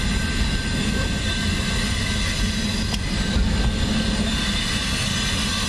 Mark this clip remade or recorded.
recorded